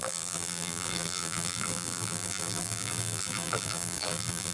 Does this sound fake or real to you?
fake